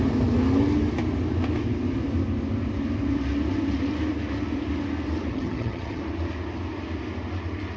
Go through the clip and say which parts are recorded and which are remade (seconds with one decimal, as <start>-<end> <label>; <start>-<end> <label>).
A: 0.0-5.3 recorded; 5.3-6.0 remade; 6.0-7.8 recorded